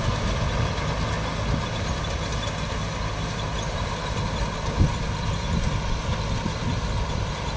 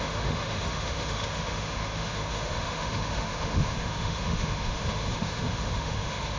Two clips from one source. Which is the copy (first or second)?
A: second